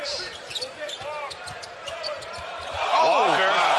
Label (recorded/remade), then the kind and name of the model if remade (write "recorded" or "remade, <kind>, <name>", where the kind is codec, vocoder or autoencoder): remade, vocoder, BigVGAN v2